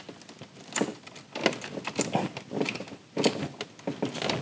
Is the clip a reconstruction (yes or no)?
no